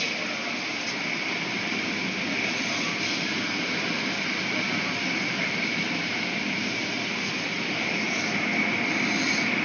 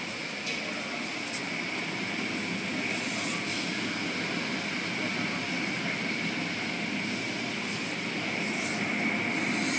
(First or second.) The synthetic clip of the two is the first